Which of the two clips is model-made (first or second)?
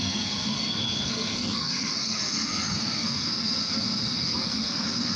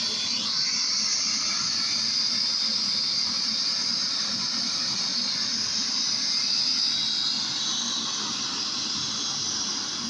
first